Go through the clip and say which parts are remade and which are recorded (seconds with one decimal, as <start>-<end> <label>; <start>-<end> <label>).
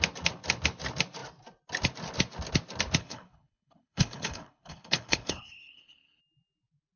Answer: 0.0-3.0 recorded; 3.0-6.2 remade; 6.2-7.0 recorded